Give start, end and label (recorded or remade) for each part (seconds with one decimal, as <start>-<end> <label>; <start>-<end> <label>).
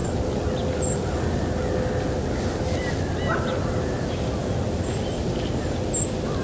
0.0-6.4 recorded